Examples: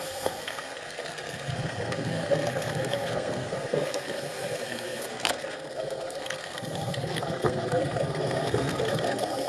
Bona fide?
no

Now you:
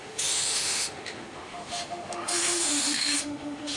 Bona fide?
no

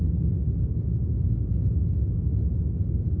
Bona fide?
yes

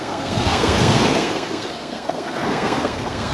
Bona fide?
no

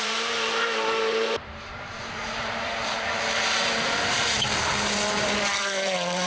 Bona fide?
no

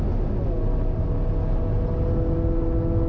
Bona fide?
yes